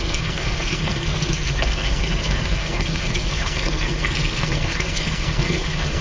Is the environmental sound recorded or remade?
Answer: remade